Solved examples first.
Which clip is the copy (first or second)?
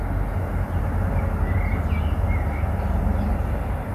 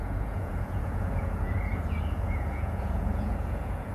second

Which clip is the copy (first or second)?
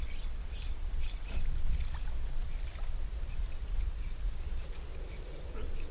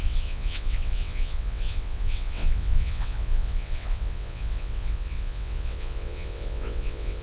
second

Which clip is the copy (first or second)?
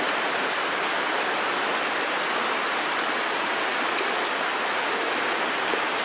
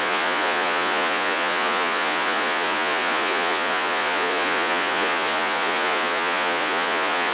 second